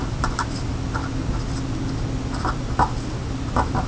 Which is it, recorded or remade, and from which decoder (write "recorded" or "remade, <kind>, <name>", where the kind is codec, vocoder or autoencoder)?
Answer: recorded